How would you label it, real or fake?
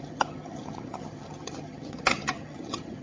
fake